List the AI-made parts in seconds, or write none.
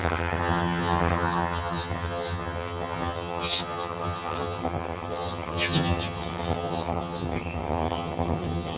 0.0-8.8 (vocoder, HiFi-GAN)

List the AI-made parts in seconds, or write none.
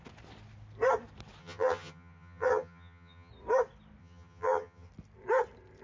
1.4-3.3 (vocoder, HiFi-GAN); 4.0-4.9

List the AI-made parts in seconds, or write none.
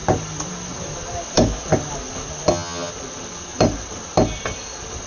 2.5-2.9 (vocoder, HiFi-GAN)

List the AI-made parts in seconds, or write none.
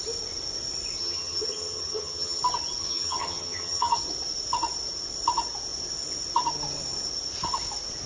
1.0-2.4 (vocoder, HiFi-GAN); 2.8-4.0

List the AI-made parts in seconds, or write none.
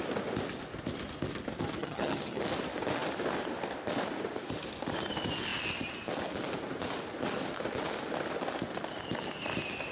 1.8-2.4 (vocoder, HiFi-GAN)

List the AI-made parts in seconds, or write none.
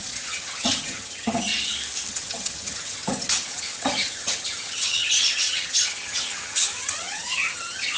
0.0-1.5 (vocoder, HiFi-GAN); 2.1-8.0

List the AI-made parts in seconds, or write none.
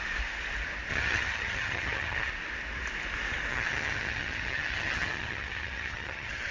0.9-2.3 (vocoder, HiFi-GAN); 3.5-6.5